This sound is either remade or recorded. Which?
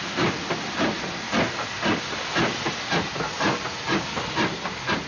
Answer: recorded